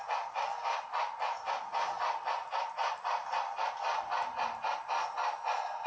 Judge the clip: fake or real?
real